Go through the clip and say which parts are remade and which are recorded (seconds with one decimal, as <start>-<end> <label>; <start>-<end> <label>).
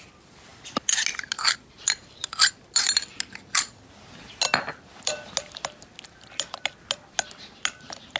0.0-8.2 recorded